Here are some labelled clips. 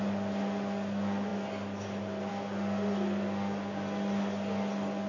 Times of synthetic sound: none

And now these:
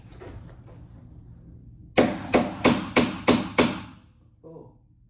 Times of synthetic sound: none

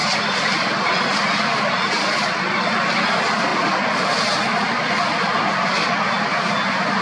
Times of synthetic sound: none